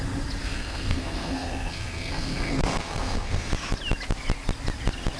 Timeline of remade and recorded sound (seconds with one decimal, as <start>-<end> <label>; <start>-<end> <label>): 0.0-0.4 recorded; 0.4-3.5 remade; 3.5-5.2 recorded